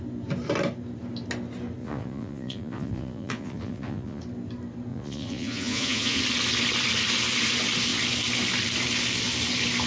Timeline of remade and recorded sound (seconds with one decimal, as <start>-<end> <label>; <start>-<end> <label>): 0.0-1.8 recorded; 1.8-4.2 remade; 4.2-4.9 recorded; 4.9-6.2 remade; 6.2-9.9 recorded